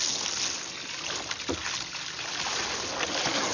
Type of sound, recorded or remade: recorded